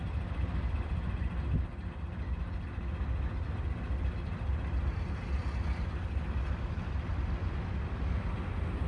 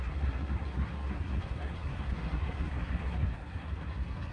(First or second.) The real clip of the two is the first